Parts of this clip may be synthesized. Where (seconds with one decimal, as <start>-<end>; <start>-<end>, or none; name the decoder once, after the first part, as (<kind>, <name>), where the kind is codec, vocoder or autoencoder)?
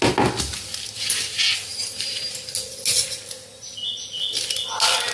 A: none